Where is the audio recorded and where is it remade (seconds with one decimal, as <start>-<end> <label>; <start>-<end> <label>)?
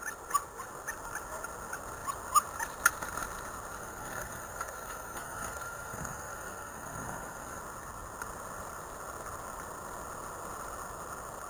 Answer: 0.0-3.8 recorded; 3.8-7.6 remade; 7.6-11.5 recorded